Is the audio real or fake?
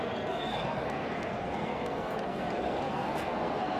fake